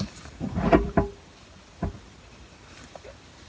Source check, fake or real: fake